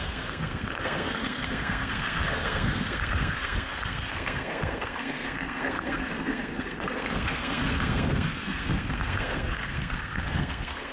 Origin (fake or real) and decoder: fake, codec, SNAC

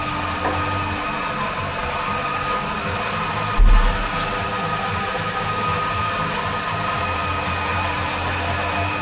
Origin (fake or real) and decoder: real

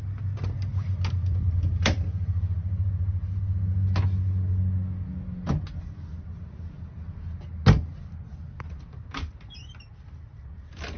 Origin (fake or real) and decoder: real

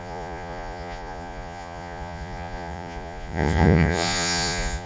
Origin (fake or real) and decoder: fake, vocoder, Vocos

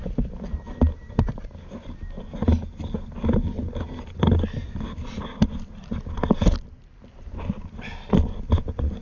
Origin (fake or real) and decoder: real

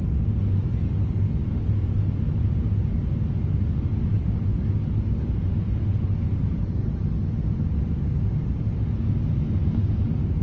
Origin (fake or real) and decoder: real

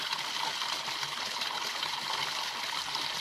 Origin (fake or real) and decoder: real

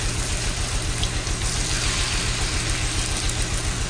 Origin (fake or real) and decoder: real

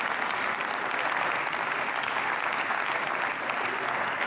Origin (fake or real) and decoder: real